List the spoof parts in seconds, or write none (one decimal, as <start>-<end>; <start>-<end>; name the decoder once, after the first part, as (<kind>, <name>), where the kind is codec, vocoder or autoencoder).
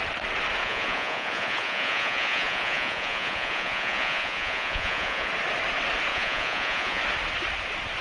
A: 0.6-5.3 (vocoder, Vocos); 6.1-7.0